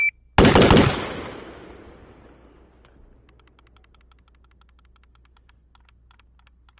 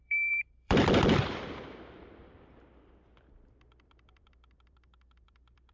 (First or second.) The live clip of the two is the first